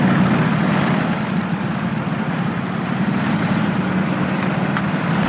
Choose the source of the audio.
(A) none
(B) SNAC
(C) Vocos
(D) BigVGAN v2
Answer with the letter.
A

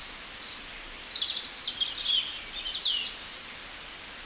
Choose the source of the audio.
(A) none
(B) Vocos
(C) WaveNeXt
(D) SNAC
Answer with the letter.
A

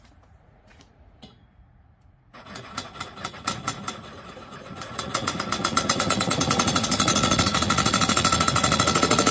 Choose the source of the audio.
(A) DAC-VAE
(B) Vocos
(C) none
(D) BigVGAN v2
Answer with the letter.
B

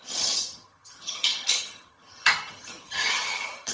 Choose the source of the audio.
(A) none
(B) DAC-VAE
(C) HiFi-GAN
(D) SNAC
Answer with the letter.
C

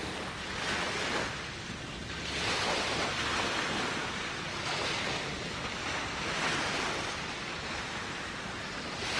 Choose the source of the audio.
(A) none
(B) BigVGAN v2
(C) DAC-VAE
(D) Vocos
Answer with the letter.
A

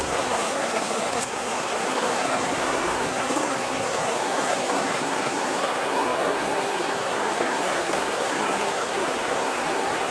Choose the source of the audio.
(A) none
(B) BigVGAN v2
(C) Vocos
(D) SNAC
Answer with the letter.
D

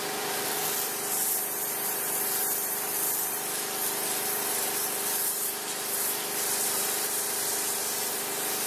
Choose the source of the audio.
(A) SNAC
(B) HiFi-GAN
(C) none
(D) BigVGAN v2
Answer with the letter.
D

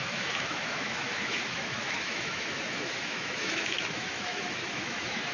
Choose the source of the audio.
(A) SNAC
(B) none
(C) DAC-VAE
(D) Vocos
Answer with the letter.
C